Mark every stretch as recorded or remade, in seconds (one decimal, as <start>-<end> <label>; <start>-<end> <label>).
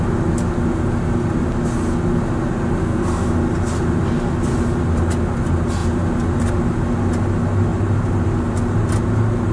0.0-2.8 recorded; 2.8-3.3 remade; 3.3-9.5 recorded